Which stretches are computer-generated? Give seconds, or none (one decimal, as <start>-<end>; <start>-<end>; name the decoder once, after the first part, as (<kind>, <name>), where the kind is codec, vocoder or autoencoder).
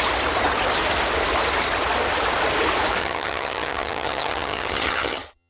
3.0-5.5 (vocoder, HiFi-GAN)